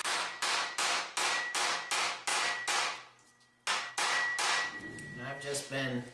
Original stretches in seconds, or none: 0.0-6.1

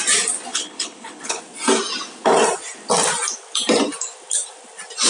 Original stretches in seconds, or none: 0.0-0.5; 1.4-5.1

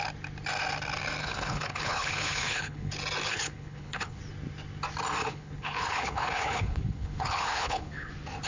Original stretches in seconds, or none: 0.0-1.2; 2.9-3.3; 4.2-5.2; 8.1-8.5

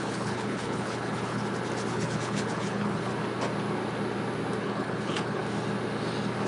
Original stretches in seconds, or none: 1.4-1.9; 3.1-4.6; 5.4-6.5

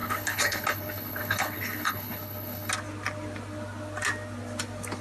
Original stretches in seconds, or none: 2.7-5.0